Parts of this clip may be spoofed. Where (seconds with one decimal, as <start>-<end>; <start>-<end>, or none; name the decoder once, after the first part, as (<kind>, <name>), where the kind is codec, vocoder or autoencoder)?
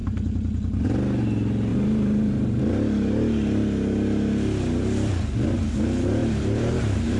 1.7-2.6 (vocoder, BigVGAN v2); 6.2-7.2